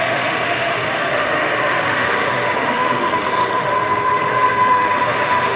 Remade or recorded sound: remade